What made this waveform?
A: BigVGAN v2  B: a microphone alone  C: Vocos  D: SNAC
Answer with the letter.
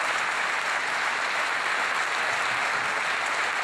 B